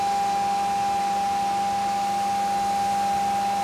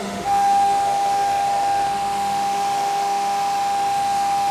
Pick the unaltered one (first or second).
first